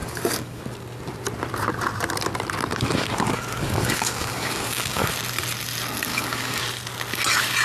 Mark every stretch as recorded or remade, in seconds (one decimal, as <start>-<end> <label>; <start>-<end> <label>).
0.0-0.6 remade; 0.6-2.7 recorded; 2.7-5.1 remade; 5.1-6.1 recorded; 6.1-6.6 remade; 6.6-7.6 recorded